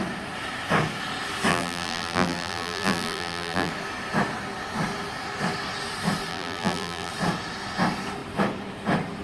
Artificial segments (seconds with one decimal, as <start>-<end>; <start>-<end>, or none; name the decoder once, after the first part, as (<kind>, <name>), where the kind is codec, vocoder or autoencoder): 1.5-3.7 (vocoder, BigVGAN v2); 6.3-7.1